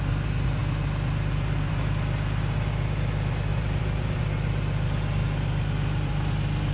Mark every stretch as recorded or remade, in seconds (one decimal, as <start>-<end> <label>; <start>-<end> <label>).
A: 0.0-3.5 recorded; 3.5-4.2 remade; 4.2-6.7 recorded